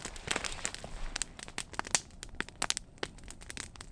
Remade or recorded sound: recorded